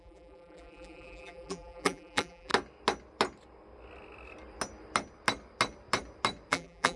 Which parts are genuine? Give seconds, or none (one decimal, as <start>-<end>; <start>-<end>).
2.5-6.5